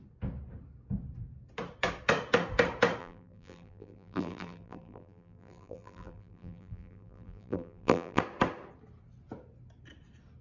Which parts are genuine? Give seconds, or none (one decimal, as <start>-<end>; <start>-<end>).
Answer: 0.0-3.0; 8.2-10.4